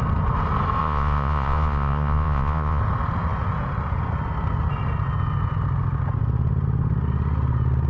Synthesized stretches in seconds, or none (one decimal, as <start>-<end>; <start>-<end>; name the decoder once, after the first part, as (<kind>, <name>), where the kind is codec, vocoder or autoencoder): 0.8-2.8 (vocoder, Vocos)